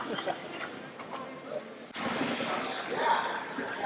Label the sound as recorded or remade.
recorded